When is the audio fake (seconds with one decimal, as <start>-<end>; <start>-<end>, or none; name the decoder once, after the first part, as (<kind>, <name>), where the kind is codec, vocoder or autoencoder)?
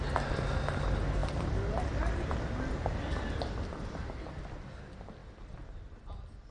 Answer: none